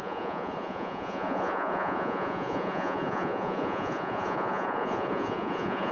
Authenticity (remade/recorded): remade